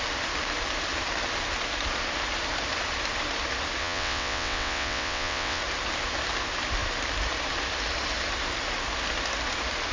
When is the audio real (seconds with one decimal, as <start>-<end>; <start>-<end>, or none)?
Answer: 0.0-3.8; 5.6-9.9